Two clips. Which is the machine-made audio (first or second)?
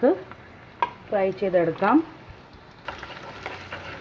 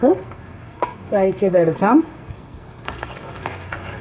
second